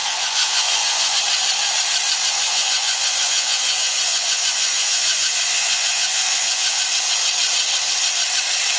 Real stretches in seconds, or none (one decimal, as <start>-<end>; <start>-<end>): 1.2-2.3; 6.8-8.8